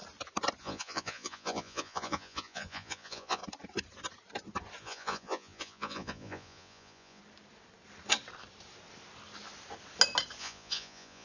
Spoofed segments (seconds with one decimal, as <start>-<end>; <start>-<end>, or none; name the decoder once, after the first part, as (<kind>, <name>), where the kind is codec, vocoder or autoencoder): 0.6-3.4 (vocoder, Vocos); 4.8-7.2; 10.4-11.2